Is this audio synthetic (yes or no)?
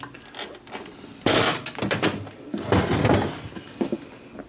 no